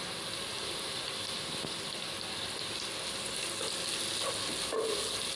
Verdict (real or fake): real